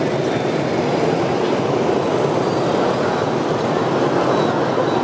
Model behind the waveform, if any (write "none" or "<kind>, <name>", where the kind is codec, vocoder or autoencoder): none